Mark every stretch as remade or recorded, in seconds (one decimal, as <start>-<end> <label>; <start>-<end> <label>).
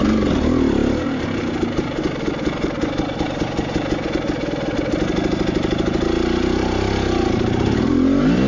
0.0-8.5 recorded